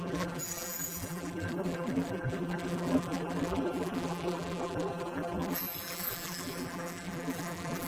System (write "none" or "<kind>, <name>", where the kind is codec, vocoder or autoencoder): vocoder, BigVGAN v2